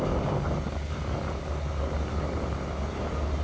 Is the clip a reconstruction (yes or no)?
no